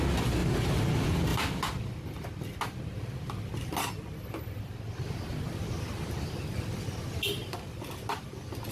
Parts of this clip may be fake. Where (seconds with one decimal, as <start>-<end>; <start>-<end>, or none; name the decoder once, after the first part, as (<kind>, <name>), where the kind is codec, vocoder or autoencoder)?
0.4-0.9 (vocoder, BigVGAN v2)